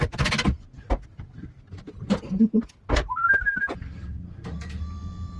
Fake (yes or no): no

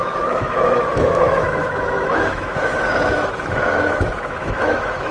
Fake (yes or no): yes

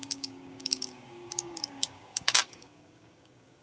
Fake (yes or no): yes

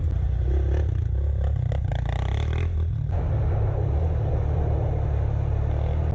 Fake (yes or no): no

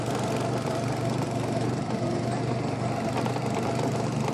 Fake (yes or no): no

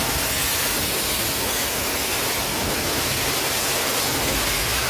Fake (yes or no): no